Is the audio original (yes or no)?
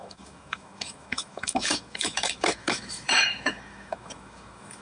no